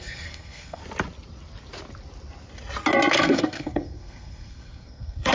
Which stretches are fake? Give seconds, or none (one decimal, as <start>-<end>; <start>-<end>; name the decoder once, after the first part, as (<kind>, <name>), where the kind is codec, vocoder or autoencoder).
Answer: 0.0-0.8 (codec, SNAC); 3.1-5.3